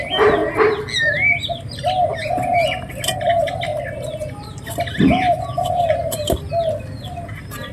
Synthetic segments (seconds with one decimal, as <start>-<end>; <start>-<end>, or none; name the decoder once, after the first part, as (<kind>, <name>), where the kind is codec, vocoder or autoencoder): none